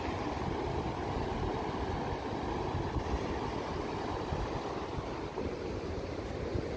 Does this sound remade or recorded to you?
recorded